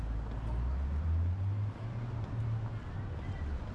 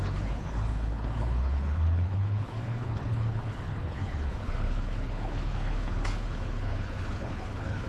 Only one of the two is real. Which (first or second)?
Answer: first